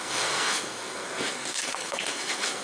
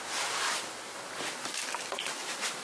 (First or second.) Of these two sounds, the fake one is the first